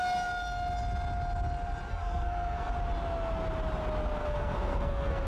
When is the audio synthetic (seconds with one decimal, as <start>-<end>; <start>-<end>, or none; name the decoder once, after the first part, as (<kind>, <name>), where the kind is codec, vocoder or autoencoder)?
1.9-2.7 (codec, SNAC); 4.2-5.3